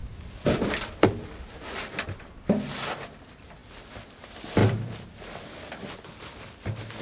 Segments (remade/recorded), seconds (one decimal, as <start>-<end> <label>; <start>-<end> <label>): 0.0-3.0 remade; 3.0-4.6 recorded; 4.6-5.9 remade; 5.9-7.0 recorded